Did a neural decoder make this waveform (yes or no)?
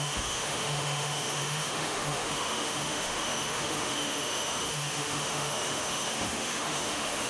yes